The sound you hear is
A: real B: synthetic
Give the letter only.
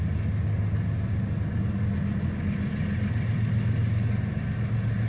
A